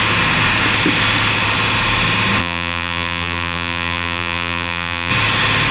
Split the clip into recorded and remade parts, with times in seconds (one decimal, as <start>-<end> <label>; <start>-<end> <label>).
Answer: 0.0-2.4 recorded; 2.4-5.1 remade; 5.1-5.7 recorded